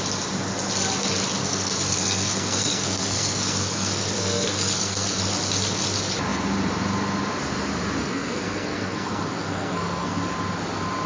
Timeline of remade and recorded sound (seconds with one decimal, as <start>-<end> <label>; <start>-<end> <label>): 0.0-1.4 recorded; 1.4-5.2 remade; 5.2-8.0 recorded; 8.0-10.2 remade; 10.2-11.1 recorded